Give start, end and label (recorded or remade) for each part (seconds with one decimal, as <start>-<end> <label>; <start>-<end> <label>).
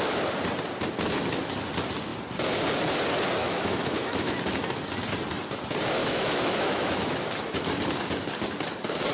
0.0-3.4 recorded; 3.4-4.4 remade; 4.4-6.0 recorded; 6.0-7.7 remade; 7.7-9.1 recorded